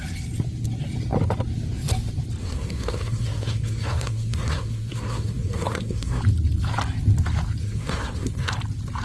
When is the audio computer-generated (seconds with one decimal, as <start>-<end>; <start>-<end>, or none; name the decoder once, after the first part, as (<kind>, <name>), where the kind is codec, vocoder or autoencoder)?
2.4-6.2 (codec, SNAC); 7.6-8.5